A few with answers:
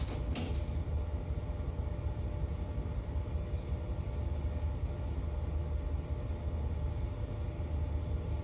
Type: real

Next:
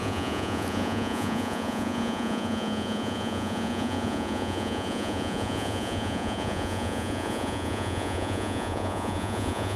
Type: fake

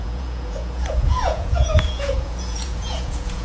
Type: fake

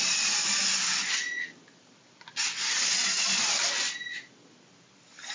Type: real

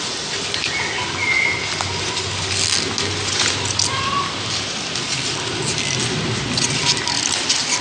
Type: real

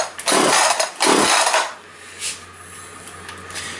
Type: real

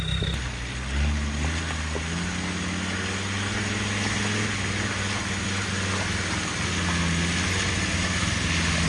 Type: real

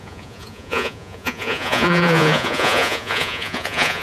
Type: fake